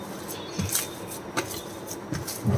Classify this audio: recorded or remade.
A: recorded